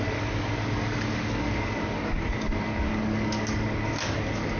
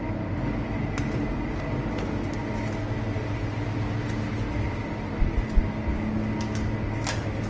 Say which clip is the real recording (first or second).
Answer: second